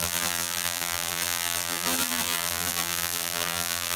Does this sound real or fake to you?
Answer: fake